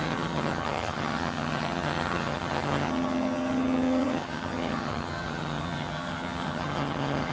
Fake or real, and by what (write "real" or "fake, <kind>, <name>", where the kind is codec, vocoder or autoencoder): fake, vocoder, HiFi-GAN